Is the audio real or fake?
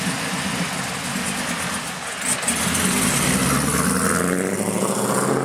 real